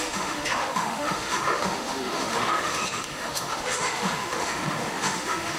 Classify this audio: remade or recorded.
remade